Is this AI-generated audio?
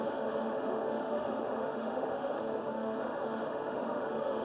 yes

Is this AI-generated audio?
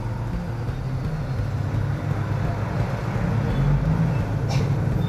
no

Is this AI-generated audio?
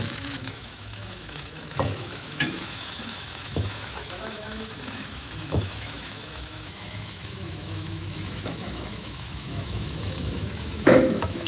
yes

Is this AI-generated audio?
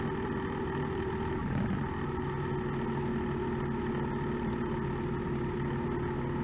no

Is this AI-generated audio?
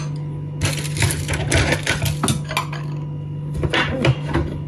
no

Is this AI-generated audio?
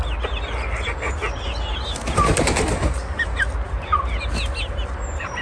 no